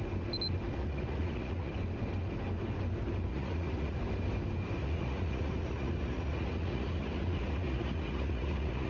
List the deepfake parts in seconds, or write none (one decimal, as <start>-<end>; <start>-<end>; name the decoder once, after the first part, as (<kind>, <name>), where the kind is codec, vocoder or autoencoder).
0.8-1.7 (vocoder, Vocos); 3.3-4.0; 4.8-8.9